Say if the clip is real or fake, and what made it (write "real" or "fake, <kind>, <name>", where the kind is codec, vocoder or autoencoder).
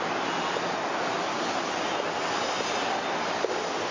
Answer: real